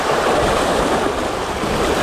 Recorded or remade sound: recorded